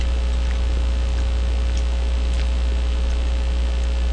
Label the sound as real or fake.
real